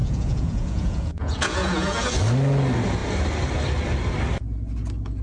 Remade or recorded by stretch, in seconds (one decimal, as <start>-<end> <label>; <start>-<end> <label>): 0.0-2.1 remade; 2.1-5.2 recorded